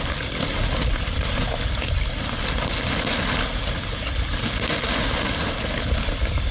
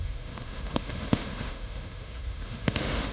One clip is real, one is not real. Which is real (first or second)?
first